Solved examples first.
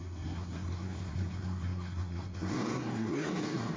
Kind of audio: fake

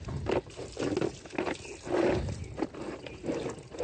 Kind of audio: real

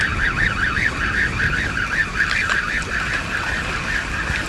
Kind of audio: real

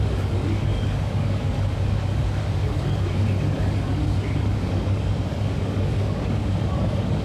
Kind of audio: fake